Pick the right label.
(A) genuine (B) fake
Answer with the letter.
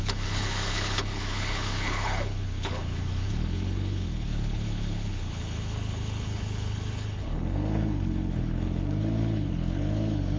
B